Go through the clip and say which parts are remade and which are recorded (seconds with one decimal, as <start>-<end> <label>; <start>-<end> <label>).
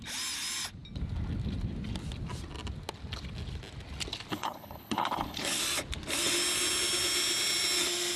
0.0-4.3 recorded; 4.3-5.6 remade; 5.6-8.2 recorded